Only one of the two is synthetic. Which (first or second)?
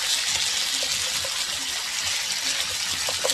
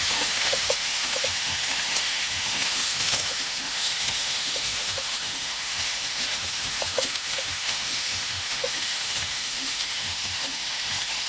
second